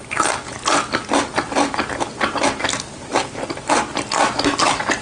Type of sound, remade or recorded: recorded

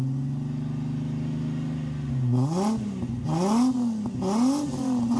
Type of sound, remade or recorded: recorded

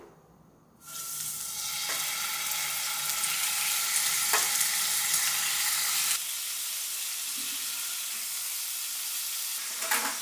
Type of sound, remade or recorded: recorded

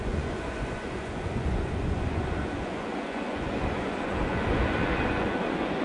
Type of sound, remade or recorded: remade